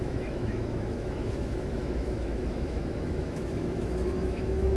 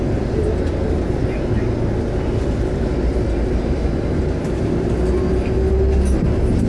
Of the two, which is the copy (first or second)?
first